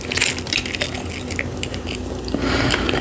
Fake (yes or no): no